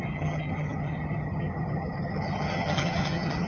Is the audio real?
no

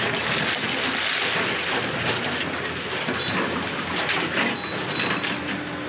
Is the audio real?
yes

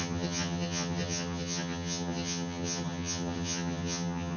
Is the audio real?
no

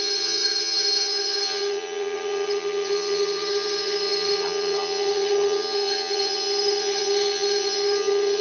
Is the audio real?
no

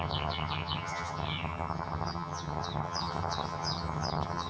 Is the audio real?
no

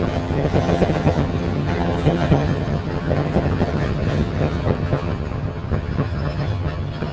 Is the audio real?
no